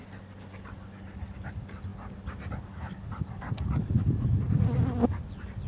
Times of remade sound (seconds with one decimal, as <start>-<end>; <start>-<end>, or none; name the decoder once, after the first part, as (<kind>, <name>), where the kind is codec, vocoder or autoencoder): none